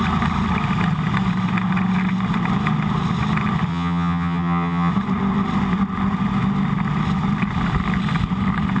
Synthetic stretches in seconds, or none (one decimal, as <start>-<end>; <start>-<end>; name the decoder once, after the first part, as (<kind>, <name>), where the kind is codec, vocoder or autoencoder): 3.7-4.9 (vocoder, HiFi-GAN)